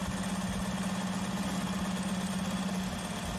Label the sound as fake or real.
real